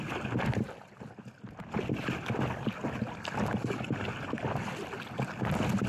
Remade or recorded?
recorded